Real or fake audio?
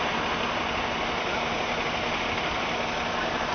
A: real